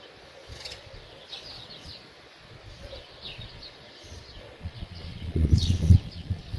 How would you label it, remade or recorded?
remade